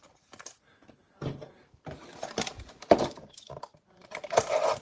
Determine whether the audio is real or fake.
real